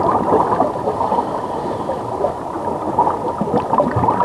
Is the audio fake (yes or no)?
no